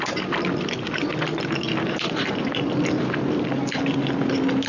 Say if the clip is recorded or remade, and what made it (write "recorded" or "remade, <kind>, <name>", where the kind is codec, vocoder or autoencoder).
recorded